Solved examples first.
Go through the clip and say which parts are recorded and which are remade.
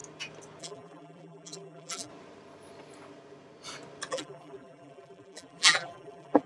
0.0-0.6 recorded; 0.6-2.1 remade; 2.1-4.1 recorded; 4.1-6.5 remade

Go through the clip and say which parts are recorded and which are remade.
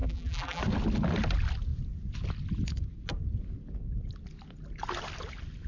0.0-0.6 remade; 0.6-5.7 recorded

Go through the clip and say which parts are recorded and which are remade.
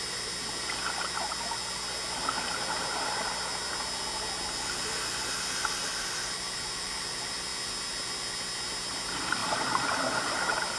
0.0-2.2 remade; 2.2-5.9 recorded; 5.9-7.5 remade; 7.5-8.9 recorded; 8.9-10.8 remade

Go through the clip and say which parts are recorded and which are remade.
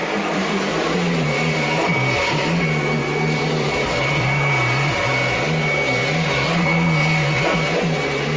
0.0-2.4 remade; 2.4-3.0 recorded; 3.0-4.0 remade; 4.0-8.4 recorded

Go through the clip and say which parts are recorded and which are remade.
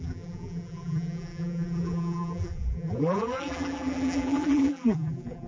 0.0-5.5 remade